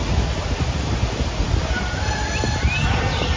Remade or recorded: recorded